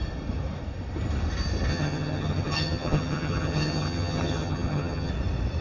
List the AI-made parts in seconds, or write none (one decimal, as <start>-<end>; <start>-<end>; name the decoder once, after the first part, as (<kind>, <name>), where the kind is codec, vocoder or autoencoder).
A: 1.7-5.1 (vocoder, HiFi-GAN)